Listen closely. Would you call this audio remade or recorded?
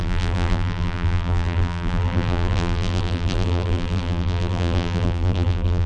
remade